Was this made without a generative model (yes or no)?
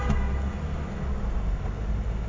yes